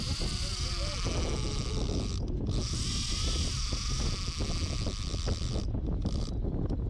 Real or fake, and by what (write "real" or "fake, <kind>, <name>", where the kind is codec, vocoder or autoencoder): real